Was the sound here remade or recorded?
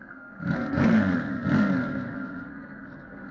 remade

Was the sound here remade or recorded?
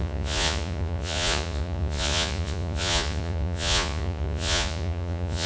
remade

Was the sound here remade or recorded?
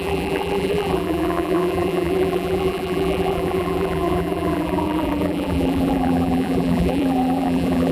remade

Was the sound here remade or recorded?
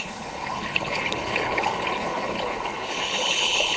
remade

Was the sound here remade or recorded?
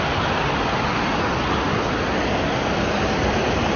recorded